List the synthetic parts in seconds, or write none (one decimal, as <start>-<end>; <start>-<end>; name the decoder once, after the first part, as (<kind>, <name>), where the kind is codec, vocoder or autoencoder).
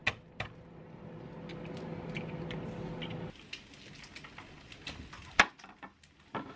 none